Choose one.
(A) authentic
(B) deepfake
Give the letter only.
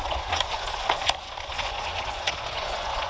B